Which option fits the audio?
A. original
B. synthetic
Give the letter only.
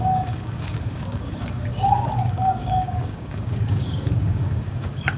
B